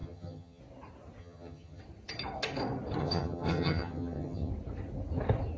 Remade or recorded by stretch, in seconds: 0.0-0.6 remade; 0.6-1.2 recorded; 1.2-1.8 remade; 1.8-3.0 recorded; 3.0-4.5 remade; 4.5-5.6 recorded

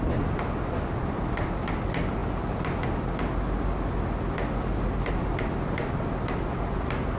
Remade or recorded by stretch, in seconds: 0.0-7.2 recorded

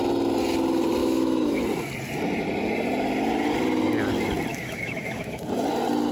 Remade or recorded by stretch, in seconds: 0.0-1.0 recorded; 1.0-1.6 remade; 1.6-4.5 recorded; 4.5-5.4 remade; 5.4-6.1 recorded

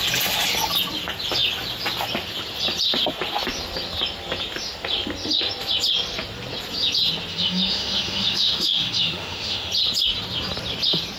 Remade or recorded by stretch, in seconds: 0.0-7.3 recorded; 7.3-9.7 remade; 9.7-11.2 recorded

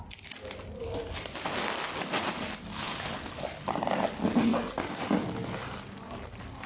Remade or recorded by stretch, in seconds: 0.0-2.7 recorded; 2.7-3.3 remade; 3.3-6.7 recorded